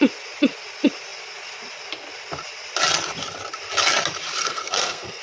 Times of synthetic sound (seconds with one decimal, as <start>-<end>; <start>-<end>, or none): 4.4-5.2